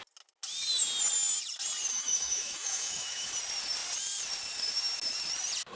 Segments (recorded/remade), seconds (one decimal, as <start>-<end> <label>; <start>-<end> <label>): 0.0-1.9 recorded; 1.9-3.3 remade; 3.3-5.8 recorded